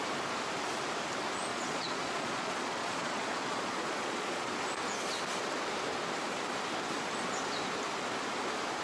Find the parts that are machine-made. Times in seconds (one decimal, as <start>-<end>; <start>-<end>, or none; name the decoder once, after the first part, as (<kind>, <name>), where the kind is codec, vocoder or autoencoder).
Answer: 1.5-4.5 (vocoder, Vocos)